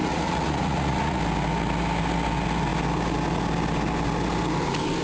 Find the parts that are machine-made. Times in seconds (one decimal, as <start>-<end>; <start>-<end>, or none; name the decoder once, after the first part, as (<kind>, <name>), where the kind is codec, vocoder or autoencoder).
0.0-1.2 (vocoder, Vocos)